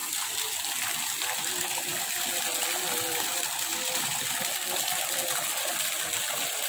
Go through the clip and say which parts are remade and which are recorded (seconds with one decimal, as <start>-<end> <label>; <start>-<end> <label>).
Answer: 0.0-6.7 recorded